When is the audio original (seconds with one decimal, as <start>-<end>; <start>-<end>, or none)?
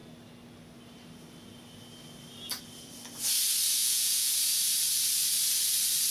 0.0-3.8; 4.3-6.1